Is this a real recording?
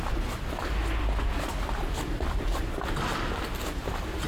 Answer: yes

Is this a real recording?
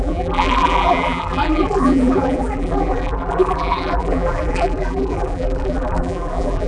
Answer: no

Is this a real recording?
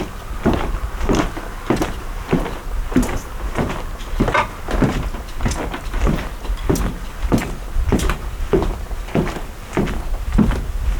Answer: yes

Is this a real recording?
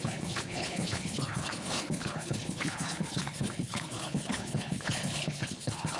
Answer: no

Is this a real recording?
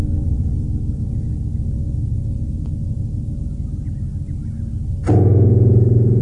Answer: yes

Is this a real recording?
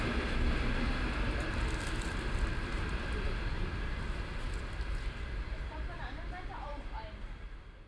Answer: yes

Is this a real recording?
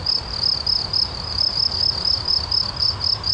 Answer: yes